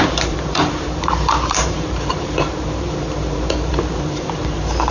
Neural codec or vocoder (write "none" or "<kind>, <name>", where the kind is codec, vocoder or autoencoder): vocoder, BigVGAN v2